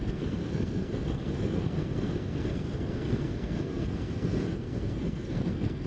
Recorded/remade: remade